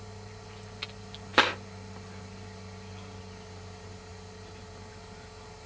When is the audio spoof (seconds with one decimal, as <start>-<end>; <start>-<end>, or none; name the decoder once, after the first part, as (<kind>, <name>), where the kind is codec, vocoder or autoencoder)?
none